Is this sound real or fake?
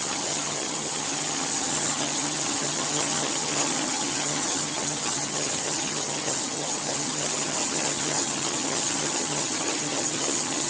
fake